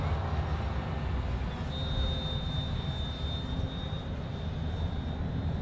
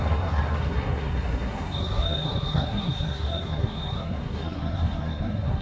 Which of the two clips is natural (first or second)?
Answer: first